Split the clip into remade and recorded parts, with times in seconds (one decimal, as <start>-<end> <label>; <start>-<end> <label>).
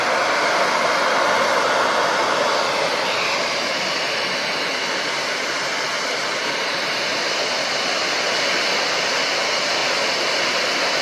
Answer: 0.0-3.4 recorded; 3.4-7.3 remade; 7.3-11.0 recorded